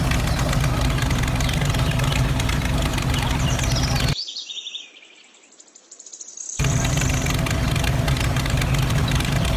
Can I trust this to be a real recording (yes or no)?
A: no